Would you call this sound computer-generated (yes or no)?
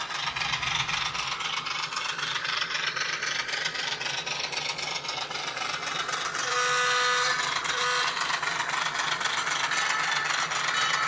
no